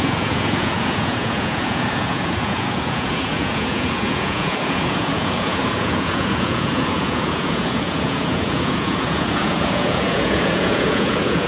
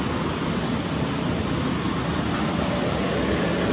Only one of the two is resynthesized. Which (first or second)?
first